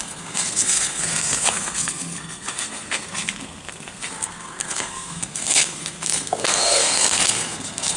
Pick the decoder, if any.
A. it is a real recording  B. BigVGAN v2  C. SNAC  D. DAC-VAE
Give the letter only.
C